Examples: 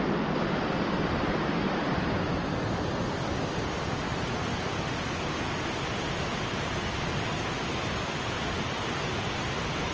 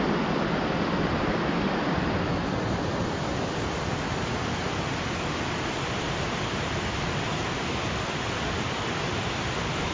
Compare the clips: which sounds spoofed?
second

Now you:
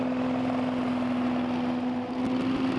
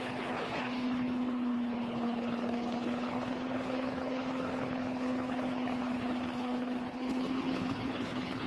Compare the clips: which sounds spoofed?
second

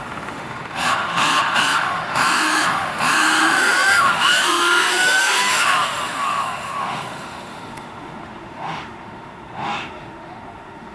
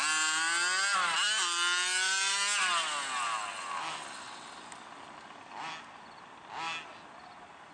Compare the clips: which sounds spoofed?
first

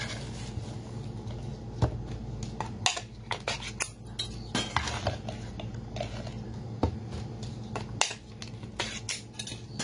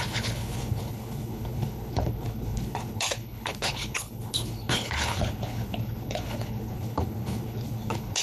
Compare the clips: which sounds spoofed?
second